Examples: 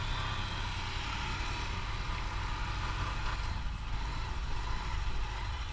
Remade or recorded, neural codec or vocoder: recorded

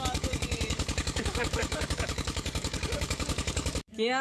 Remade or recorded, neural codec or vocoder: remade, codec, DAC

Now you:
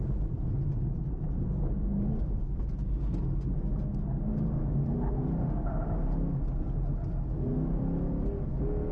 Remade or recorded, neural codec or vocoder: recorded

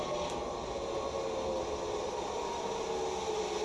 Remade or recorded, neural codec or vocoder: recorded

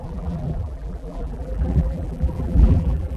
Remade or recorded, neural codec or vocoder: remade, vocoder, BigVGAN v2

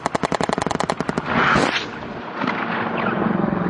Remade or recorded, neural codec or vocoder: recorded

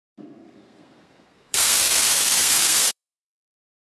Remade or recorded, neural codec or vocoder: remade, codec, SNAC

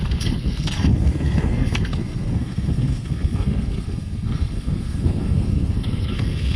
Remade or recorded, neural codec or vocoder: remade, codec, SNAC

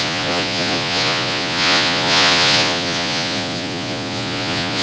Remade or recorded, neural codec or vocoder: remade, vocoder, Vocos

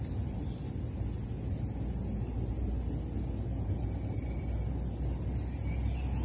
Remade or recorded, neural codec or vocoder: recorded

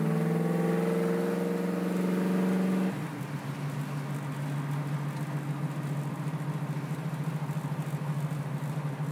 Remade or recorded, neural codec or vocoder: recorded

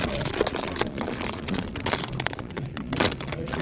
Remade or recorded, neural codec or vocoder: remade, vocoder, Vocos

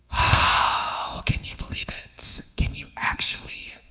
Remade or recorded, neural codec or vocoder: remade, codec, SNAC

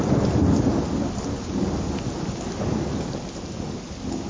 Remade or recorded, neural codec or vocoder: recorded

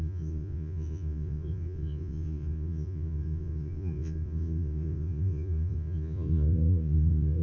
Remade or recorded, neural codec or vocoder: remade, vocoder, Vocos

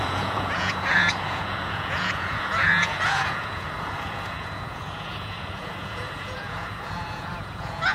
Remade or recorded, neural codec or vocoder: remade, vocoder, Vocos